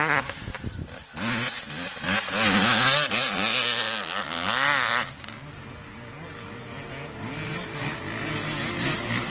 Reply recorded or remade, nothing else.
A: recorded